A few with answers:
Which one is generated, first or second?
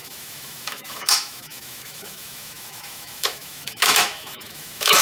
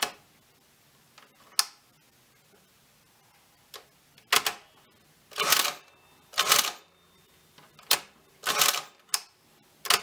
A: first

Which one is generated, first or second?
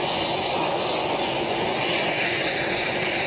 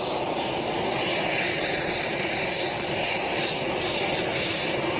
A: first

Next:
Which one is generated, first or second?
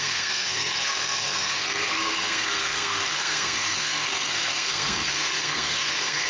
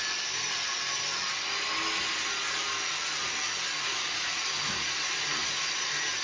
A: first